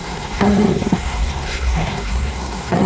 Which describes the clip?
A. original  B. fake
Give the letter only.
B